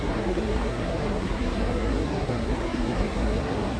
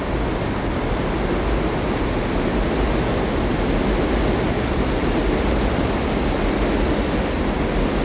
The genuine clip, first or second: second